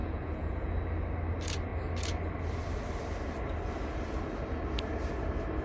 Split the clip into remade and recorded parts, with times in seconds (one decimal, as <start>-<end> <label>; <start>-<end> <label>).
0.0-0.7 remade; 0.7-5.6 recorded